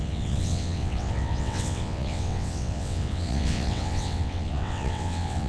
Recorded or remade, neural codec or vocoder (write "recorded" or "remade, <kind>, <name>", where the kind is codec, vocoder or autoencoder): remade, vocoder, WaveNeXt